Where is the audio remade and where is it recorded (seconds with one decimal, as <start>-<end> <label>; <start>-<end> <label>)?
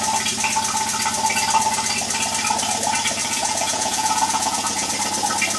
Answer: 0.0-3.2 recorded; 3.2-4.9 remade; 4.9-5.6 recorded